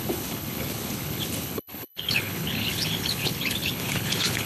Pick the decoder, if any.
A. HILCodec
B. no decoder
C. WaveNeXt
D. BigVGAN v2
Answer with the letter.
A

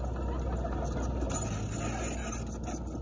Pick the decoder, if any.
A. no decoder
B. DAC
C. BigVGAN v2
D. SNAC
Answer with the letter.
A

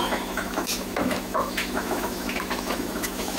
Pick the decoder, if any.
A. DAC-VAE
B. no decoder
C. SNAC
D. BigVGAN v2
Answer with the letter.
A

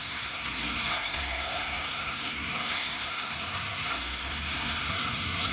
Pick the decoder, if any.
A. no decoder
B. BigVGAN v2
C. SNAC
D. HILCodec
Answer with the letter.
C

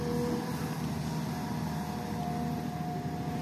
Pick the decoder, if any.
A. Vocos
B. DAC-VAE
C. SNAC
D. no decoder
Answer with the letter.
D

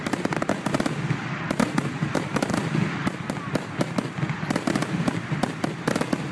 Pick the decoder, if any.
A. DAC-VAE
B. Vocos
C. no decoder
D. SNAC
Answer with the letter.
C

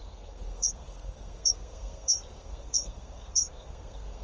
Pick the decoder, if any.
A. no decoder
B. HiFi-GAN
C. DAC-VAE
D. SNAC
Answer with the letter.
D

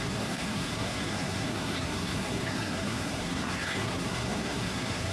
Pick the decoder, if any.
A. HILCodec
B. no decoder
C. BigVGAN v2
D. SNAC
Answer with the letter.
D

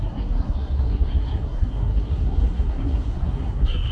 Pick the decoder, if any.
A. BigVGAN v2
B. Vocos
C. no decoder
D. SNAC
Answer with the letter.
D